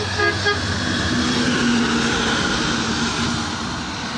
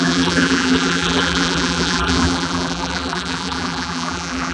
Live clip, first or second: first